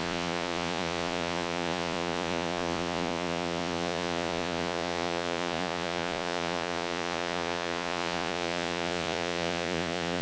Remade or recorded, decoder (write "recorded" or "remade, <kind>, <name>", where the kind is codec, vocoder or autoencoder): remade, vocoder, Vocos